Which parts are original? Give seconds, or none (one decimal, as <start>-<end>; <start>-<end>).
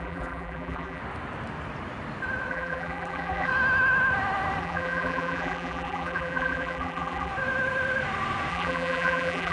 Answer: 1.0-2.5; 3.5-4.6; 7.3-8.5